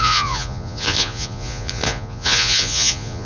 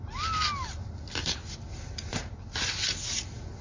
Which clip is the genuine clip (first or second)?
second